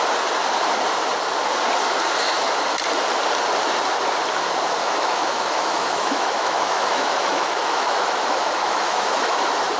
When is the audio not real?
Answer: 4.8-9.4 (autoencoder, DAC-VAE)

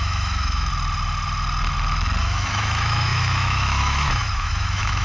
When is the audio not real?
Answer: 0.0-0.7 (autoencoder, DAC-VAE); 2.2-5.0

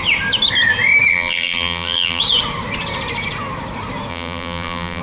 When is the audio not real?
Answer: 1.1-2.2 (vocoder, BigVGAN v2); 4.1-5.0